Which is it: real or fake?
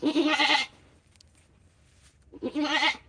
real